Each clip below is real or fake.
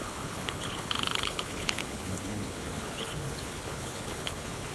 fake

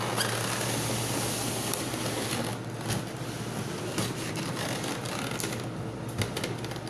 real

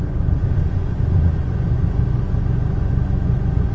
fake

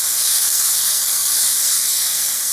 fake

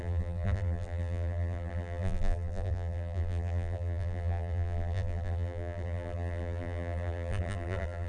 fake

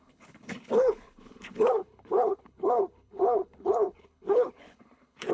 fake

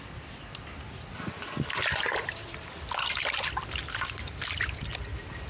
real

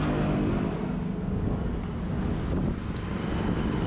real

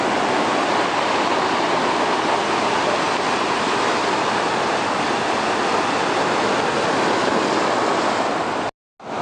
real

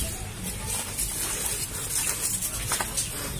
real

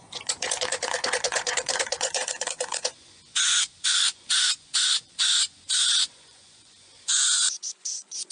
fake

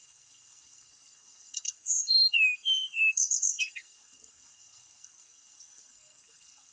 fake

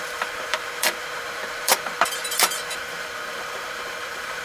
fake